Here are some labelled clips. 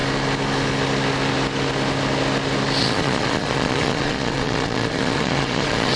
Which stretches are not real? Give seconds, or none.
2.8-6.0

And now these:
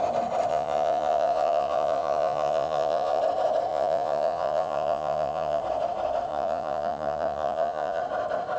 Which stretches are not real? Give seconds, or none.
0.5-3.2; 3.7-5.6; 6.3-8.0

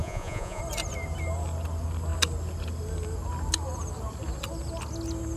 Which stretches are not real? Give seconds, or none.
0.0-0.6